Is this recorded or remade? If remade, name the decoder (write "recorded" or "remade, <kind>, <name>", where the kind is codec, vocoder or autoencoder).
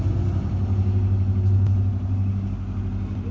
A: recorded